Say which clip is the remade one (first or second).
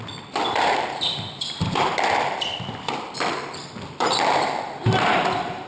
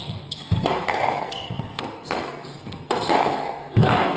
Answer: second